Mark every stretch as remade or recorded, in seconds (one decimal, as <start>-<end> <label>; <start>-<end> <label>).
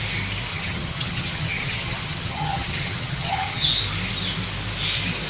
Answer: 0.0-0.5 recorded; 0.5-3.7 remade; 3.7-5.3 recorded